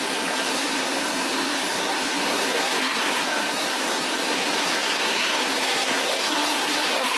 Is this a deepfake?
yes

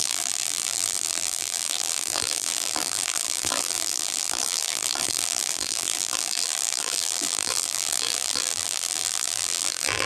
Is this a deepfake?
yes